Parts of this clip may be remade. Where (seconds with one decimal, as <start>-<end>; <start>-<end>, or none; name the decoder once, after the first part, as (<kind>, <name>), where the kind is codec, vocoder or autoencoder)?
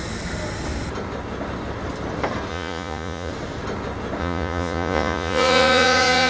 2.5-3.3 (vocoder, Vocos); 4.2-6.3